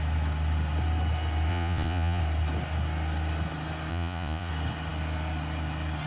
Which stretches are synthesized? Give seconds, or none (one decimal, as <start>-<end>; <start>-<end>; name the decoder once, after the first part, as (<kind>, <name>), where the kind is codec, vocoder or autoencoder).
1.5-2.2 (vocoder, Vocos); 3.9-4.5